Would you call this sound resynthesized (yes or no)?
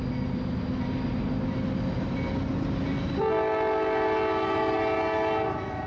no